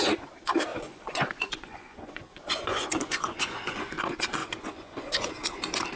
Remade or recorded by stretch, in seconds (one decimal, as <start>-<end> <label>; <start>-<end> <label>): 0.0-0.7 recorded; 0.7-3.9 remade; 3.9-4.4 recorded; 4.4-5.3 remade; 5.3-6.0 recorded